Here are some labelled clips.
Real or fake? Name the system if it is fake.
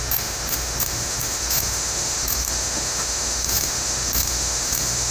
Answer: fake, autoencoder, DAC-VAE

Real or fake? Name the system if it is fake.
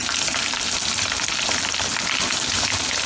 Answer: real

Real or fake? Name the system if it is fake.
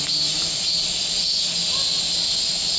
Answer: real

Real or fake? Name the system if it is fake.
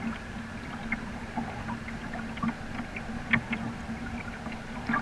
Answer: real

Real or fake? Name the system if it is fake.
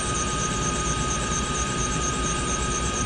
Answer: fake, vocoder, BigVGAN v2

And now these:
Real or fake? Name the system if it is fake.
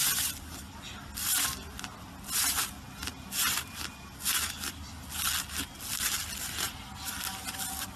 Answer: real